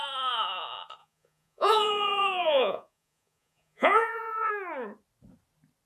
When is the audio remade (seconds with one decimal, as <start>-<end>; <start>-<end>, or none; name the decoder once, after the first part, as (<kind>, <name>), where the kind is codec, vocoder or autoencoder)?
1.0-4.5 (vocoder, Vocos)